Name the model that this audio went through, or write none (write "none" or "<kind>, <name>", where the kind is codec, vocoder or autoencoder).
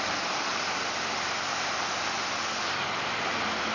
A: vocoder, BigVGAN v2